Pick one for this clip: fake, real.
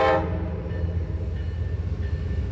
real